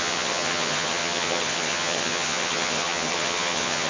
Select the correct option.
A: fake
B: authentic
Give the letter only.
A